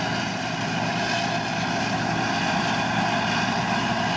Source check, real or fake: real